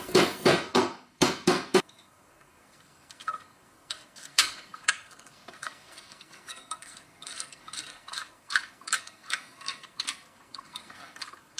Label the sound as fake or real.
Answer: fake